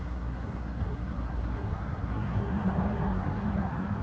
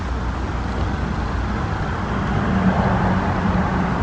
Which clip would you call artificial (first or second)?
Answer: first